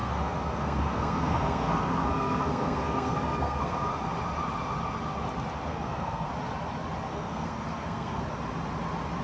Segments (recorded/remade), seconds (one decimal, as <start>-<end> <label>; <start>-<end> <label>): 0.0-3.9 remade; 3.9-5.7 recorded; 5.7-6.3 remade; 6.3-7.1 recorded; 7.1-8.2 remade; 8.2-9.2 recorded